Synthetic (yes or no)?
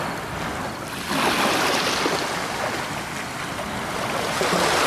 no